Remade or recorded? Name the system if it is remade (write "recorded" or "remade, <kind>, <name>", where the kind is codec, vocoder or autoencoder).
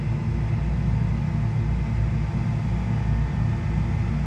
recorded